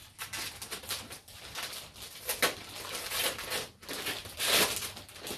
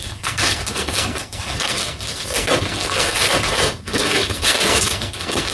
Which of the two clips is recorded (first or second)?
first